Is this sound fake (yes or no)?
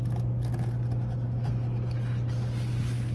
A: no